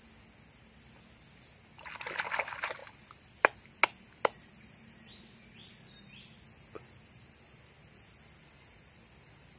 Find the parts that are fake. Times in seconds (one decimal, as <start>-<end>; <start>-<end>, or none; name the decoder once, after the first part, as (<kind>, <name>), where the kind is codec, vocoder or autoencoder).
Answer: 2.8-3.7 (vocoder, BigVGAN v2)